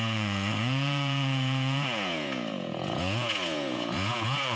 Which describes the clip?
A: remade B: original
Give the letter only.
A